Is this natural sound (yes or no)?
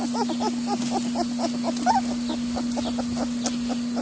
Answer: yes